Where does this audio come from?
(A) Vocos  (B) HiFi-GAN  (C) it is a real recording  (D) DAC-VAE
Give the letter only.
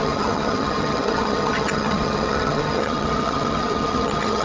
B